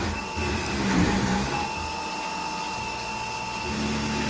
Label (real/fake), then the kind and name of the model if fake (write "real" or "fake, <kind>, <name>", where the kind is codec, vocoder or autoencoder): real